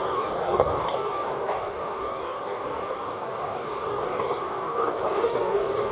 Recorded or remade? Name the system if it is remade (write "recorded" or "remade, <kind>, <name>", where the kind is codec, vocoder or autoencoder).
remade, codec, DAC